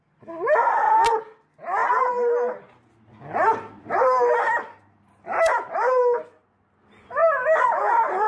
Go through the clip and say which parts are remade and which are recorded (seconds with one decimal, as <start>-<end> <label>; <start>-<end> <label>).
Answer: 0.0-8.3 recorded